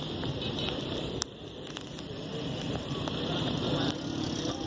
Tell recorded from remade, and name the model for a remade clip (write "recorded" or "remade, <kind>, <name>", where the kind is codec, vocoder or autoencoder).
recorded